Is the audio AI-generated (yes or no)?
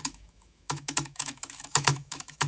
yes